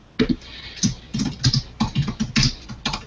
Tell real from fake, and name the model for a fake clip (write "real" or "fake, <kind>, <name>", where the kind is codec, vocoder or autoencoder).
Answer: real